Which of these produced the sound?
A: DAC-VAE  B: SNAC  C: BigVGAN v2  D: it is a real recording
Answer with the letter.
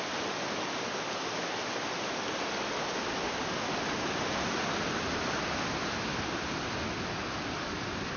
D